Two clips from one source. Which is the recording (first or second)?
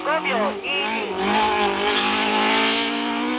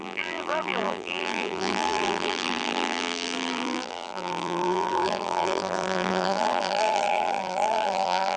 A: first